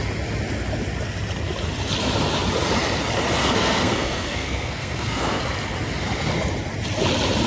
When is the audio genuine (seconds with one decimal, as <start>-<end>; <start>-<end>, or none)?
0.0-3.4; 5.4-7.5